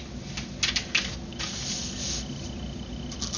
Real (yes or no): yes